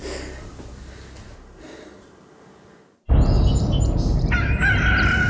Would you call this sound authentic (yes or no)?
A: yes